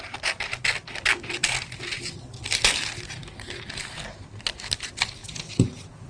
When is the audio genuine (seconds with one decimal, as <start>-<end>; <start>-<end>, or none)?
0.0-5.2